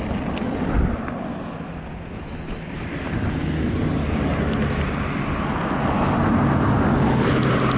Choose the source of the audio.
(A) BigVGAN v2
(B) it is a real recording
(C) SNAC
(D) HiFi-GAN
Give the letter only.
B